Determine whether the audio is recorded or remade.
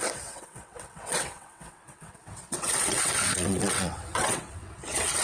remade